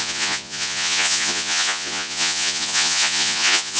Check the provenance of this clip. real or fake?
fake